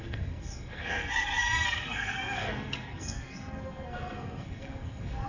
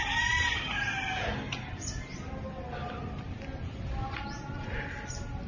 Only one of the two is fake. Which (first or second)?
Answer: first